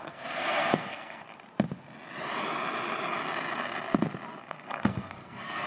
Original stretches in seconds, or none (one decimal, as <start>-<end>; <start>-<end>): 1.3-4.4